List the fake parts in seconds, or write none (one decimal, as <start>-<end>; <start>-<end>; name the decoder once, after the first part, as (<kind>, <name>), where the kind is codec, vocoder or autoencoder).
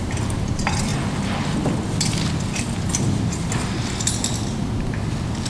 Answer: none